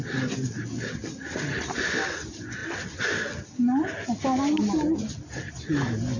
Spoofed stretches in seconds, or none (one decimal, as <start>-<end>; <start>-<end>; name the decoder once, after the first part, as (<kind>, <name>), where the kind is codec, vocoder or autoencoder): none